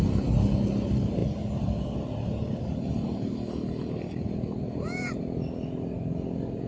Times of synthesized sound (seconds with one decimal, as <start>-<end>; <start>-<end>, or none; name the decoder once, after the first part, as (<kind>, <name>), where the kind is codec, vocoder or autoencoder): none